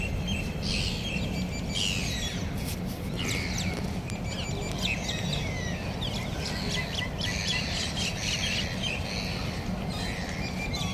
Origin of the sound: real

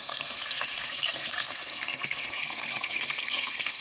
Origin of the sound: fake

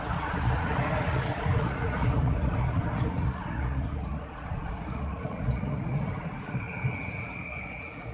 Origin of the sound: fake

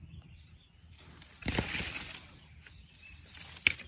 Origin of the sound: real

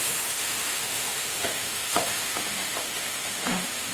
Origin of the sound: fake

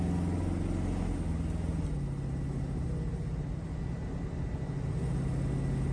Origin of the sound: real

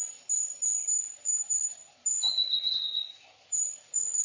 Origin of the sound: real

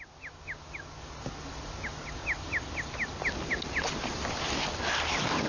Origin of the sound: real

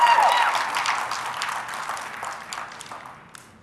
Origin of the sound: real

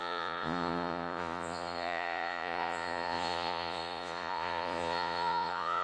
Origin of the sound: fake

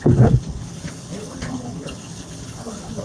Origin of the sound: fake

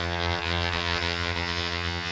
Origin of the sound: fake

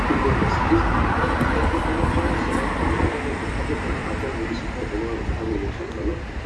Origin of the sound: real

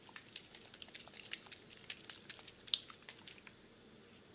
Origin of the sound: real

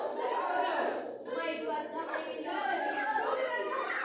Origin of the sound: real